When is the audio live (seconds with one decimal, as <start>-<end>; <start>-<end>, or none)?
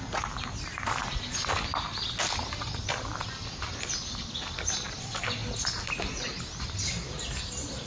0.0-7.9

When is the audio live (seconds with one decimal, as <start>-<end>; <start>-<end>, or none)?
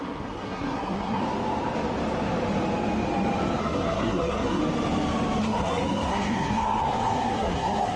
1.2-3.6; 4.6-5.4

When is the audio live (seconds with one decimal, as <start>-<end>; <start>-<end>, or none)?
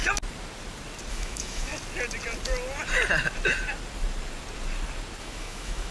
0.0-1.1; 1.7-5.2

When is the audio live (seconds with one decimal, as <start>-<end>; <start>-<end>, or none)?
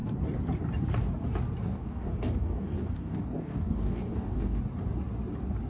0.0-1.7; 4.6-5.7